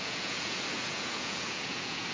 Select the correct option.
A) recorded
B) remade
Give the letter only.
B